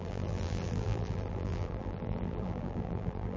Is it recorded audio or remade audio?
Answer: remade